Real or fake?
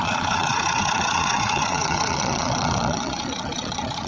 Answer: fake